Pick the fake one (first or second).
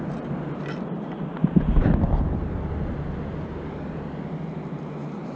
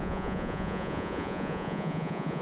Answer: second